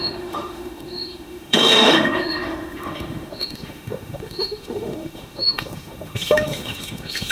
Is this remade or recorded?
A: remade